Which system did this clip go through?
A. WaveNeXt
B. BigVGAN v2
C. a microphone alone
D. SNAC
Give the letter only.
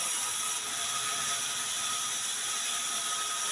C